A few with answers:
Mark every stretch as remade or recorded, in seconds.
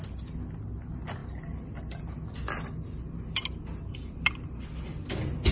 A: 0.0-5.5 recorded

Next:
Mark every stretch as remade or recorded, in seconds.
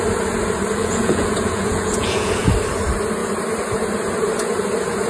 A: 0.0-0.8 recorded; 0.8-2.5 remade; 2.5-5.1 recorded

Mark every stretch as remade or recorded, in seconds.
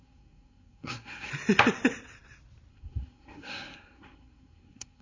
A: 0.0-1.3 remade; 1.3-2.7 recorded; 2.7-5.0 remade